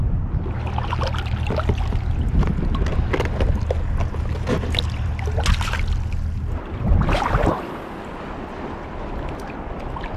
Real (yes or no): yes